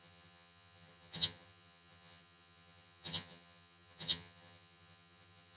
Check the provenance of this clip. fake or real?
fake